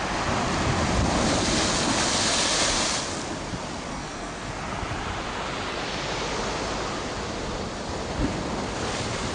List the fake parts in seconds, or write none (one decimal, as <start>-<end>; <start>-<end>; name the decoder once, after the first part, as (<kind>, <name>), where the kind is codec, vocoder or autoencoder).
3.9-4.5 (codec, SNAC)